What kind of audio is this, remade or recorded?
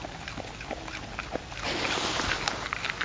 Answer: recorded